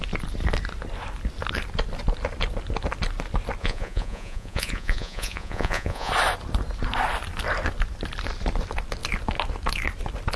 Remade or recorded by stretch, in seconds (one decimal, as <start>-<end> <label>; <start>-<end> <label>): 0.0-3.6 recorded; 3.6-6.1 remade; 6.1-10.4 recorded